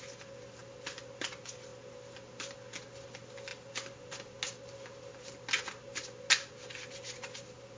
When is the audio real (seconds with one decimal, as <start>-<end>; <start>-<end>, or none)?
0.0-7.8